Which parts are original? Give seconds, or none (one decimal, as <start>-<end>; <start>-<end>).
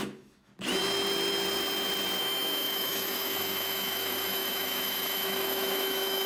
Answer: 0.5-2.2